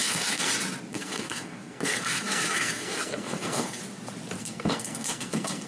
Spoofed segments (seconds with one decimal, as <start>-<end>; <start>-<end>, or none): 0.0-0.5; 0.9-3.8; 4.4-5.7